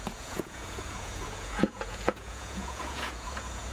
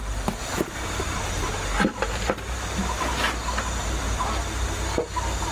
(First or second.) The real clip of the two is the second